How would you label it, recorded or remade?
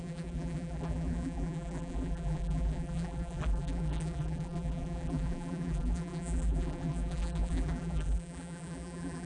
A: remade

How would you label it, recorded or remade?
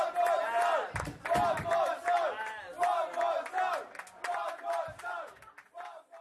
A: recorded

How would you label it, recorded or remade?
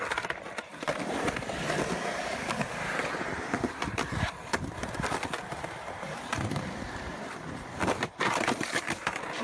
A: remade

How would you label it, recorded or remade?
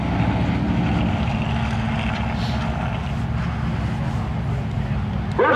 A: recorded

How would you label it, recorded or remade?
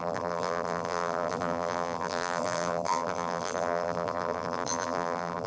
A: remade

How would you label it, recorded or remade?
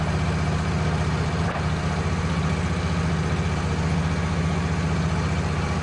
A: recorded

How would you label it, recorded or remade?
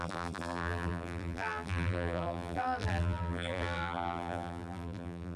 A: remade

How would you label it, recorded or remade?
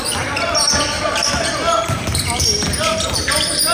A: remade